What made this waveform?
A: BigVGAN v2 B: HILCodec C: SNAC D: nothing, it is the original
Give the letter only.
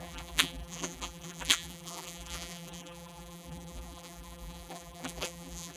A